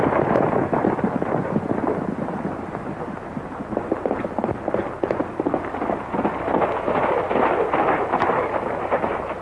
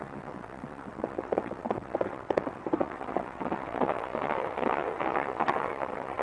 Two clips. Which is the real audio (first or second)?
first